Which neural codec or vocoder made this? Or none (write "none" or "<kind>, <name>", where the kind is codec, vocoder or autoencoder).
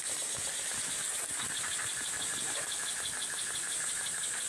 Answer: none